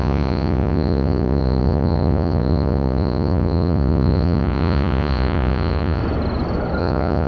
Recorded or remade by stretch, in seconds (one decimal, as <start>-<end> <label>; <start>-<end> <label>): 0.0-6.0 remade; 6.0-6.8 recorded; 6.8-7.3 remade